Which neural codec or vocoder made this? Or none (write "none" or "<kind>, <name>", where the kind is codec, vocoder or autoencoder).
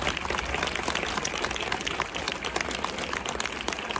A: none